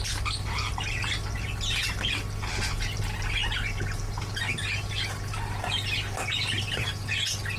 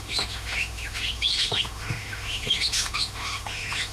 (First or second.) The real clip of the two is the first